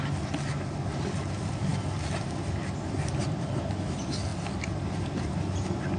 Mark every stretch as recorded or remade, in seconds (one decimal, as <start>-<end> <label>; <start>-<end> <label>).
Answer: 0.0-6.0 recorded